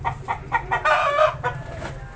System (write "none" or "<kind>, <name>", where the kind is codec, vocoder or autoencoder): none